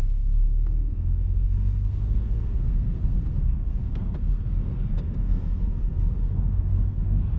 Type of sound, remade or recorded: remade